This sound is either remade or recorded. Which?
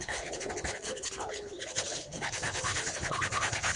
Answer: remade